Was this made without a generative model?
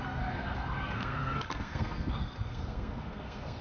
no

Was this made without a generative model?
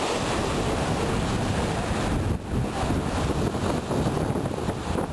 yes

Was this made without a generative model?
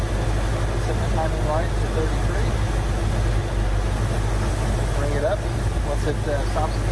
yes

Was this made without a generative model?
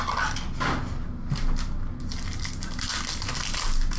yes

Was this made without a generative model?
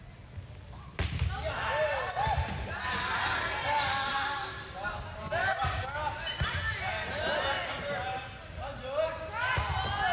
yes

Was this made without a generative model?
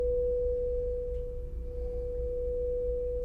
yes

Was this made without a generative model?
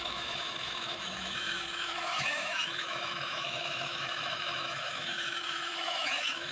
no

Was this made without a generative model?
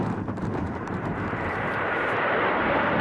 no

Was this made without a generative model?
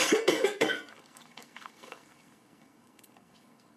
no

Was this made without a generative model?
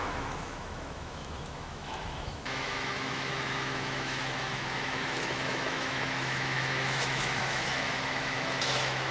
no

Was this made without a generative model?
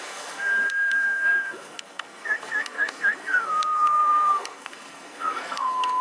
no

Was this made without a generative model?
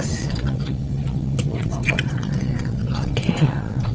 no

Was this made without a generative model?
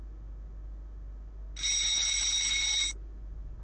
yes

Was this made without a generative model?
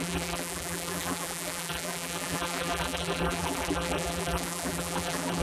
no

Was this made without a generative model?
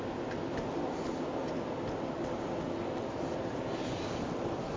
yes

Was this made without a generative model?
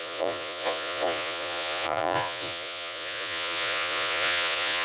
no